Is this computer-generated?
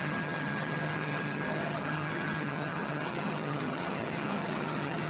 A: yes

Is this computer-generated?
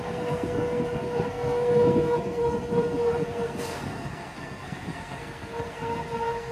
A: yes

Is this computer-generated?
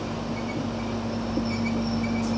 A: no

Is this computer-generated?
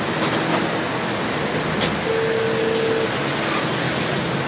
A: no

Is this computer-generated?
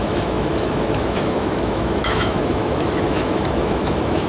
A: yes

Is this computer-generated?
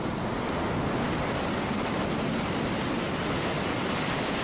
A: no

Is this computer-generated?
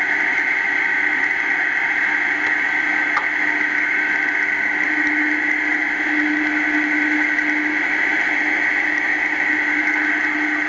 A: no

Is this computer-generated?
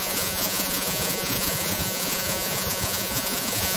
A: yes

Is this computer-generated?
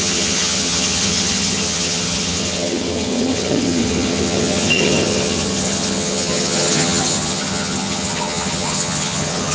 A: yes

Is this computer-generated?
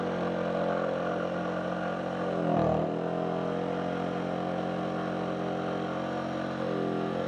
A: no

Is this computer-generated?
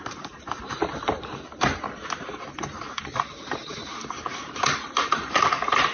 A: yes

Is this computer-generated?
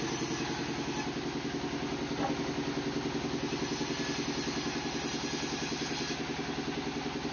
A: no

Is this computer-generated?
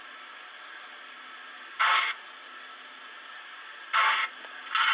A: no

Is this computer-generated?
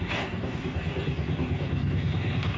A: yes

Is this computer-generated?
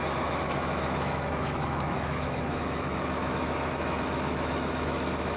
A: yes